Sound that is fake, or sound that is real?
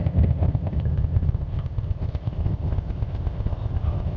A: fake